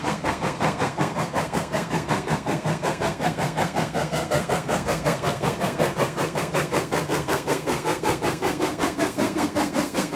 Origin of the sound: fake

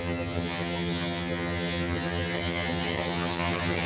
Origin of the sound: fake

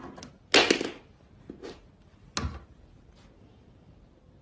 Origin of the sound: real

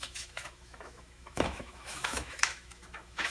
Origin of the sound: fake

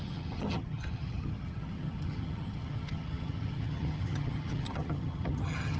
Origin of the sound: fake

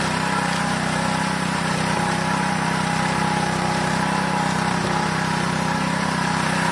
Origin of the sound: fake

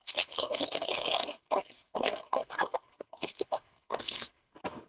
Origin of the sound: fake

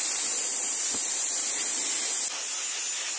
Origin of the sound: real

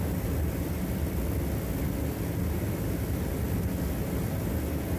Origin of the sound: real